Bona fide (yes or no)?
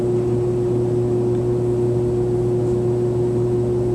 yes